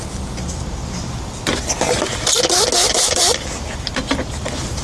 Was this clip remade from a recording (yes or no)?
no